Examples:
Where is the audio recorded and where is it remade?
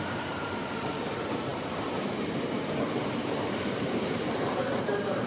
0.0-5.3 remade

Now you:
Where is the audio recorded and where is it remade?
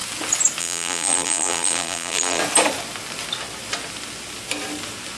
0.0-0.6 recorded; 0.6-2.4 remade; 2.4-5.2 recorded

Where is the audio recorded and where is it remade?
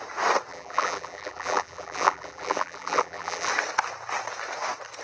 0.0-0.5 recorded; 0.5-3.5 remade; 3.5-5.0 recorded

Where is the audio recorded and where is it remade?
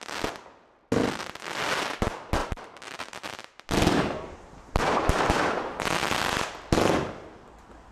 0.0-2.4 recorded; 2.4-3.6 remade; 3.6-7.9 recorded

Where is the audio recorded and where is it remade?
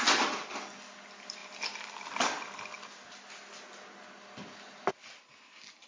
0.0-5.9 recorded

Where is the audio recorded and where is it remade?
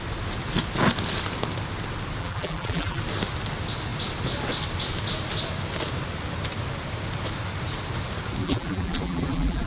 0.0-2.2 recorded; 2.2-3.0 remade; 3.0-8.4 recorded; 8.4-9.7 remade